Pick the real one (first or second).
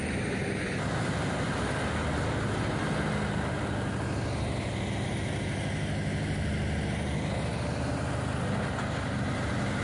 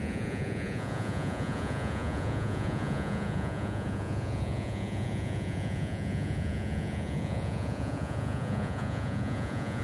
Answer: first